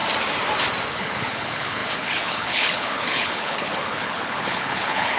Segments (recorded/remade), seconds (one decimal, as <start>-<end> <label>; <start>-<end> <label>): 0.0-0.9 recorded; 0.9-5.2 remade

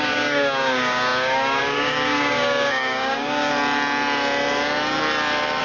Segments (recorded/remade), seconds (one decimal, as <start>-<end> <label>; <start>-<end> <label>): 0.0-3.5 remade; 3.5-5.6 recorded

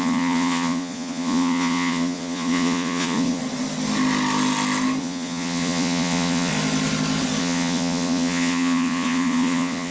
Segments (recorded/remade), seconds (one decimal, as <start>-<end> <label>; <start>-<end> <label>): 0.0-3.4 remade; 3.4-5.0 recorded; 5.0-6.5 remade; 6.5-7.4 recorded; 7.4-9.9 remade

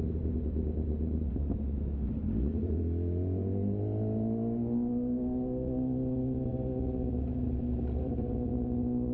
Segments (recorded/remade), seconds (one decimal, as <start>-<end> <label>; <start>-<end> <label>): 0.0-9.1 recorded

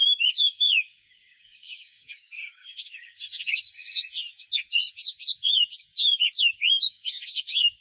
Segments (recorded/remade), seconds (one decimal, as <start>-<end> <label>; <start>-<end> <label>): 0.0-3.2 remade; 3.2-5.0 recorded; 5.0-7.8 remade